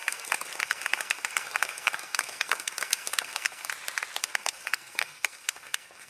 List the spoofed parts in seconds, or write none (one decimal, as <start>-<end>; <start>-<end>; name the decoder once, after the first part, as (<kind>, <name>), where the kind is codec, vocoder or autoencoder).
0.0-3.7 (codec, SNAC); 4.2-6.1